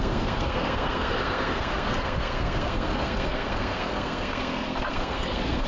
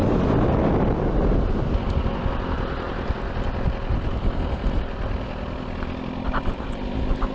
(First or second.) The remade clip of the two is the first